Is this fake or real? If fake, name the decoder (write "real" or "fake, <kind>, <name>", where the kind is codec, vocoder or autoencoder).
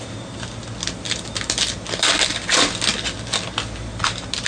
real